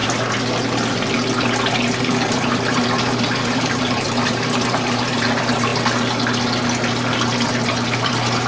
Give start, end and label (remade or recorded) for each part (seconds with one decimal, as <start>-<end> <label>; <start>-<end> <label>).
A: 0.0-2.0 recorded; 2.0-5.7 remade; 5.7-7.5 recorded; 7.5-8.5 remade